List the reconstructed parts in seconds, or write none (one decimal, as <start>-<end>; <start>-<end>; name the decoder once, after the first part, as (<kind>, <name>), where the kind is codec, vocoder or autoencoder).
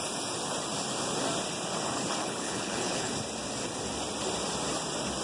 2.2-3.1 (codec, HILCodec)